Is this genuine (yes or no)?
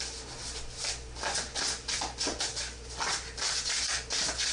yes